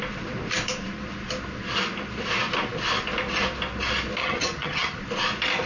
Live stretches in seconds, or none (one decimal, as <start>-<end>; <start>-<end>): 0.0-4.2; 5.0-5.7